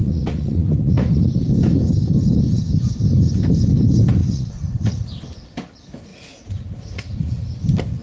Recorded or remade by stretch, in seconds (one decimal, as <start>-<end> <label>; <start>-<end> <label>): 0.0-1.3 remade; 1.3-4.2 recorded; 4.2-5.0 remade; 5.0-6.1 recorded; 6.1-7.5 remade; 7.5-8.0 recorded